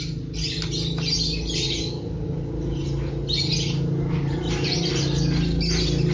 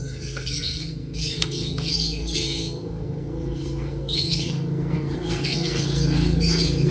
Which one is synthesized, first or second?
second